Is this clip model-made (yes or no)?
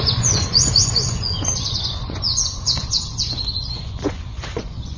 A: yes